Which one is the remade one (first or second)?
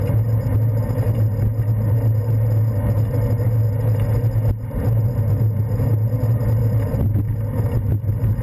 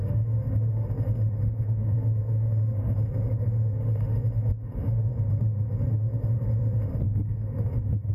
second